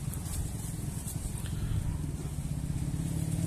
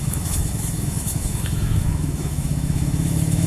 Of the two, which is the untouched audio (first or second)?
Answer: first